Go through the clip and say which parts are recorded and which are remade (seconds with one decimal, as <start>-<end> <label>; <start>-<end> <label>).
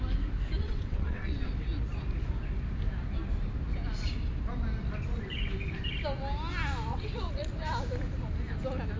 0.0-0.6 recorded; 0.6-1.5 remade; 1.5-6.9 recorded; 6.9-7.5 remade; 7.5-9.0 recorded